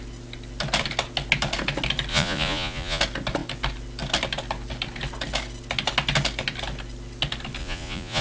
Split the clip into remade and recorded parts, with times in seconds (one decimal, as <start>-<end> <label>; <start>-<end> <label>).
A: 0.0-2.1 recorded; 2.1-3.0 remade; 3.0-7.6 recorded; 7.6-8.2 remade